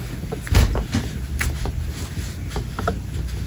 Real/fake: real